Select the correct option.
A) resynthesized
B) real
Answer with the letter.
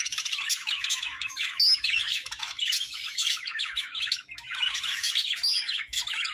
A